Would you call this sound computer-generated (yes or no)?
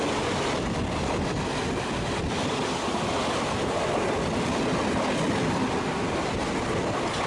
no